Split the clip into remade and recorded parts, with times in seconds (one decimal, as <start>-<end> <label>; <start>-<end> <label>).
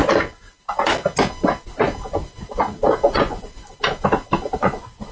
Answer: 0.0-3.1 recorded; 3.1-3.5 remade; 3.5-4.6 recorded; 4.6-5.1 remade